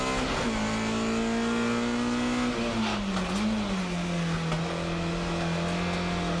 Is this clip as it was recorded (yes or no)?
yes